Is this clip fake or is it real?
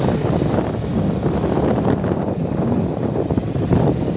real